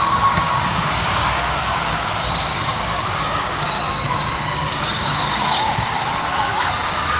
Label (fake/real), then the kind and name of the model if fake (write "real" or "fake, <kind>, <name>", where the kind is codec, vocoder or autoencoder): fake, codec, DAC